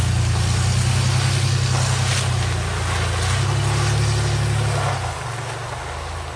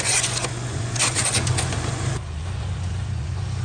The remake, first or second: second